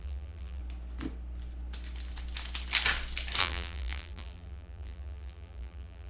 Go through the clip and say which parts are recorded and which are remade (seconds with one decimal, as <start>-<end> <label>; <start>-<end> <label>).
0.0-0.6 remade; 0.6-3.4 recorded; 3.4-6.1 remade